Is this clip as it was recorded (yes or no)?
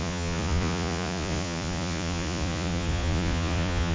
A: no